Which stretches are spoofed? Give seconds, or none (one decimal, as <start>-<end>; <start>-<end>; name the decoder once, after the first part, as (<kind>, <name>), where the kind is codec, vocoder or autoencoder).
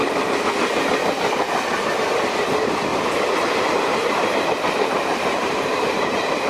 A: 2.9-6.5 (vocoder, BigVGAN v2)